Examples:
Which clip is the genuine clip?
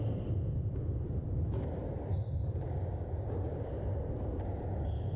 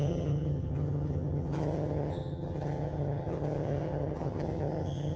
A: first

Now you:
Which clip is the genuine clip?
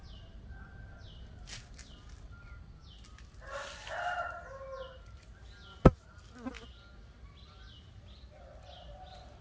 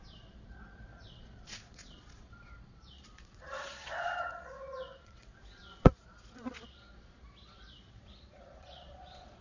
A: first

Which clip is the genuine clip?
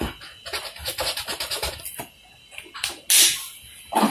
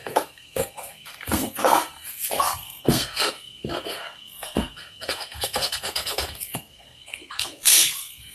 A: first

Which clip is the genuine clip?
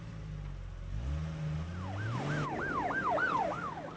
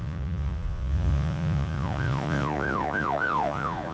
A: first